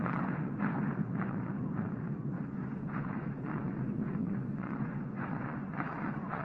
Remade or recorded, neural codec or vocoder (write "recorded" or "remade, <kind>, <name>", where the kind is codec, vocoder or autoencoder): remade, vocoder, Vocos